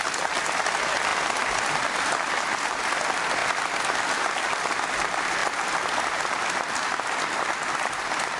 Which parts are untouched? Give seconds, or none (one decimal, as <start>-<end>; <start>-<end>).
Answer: 0.0-8.4